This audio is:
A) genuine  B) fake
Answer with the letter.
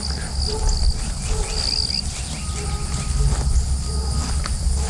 A